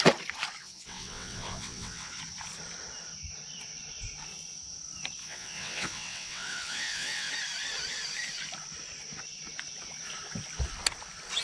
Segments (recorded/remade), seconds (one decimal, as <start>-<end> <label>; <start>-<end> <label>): 0.0-0.6 recorded; 0.6-2.2 remade; 2.2-5.2 recorded; 5.2-7.3 remade; 7.3-11.4 recorded